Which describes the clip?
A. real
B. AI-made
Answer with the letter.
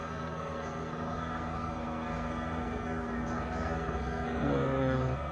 B